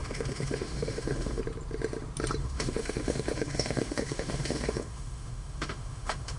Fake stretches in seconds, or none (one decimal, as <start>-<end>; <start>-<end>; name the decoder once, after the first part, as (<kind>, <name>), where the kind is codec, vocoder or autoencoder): 0.0-1.4 (autoencoder, DAC-VAE); 2.4-6.4